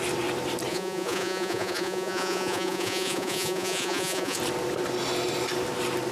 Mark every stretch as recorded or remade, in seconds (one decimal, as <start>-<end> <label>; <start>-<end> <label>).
0.0-0.7 recorded; 0.7-4.4 remade; 4.4-6.1 recorded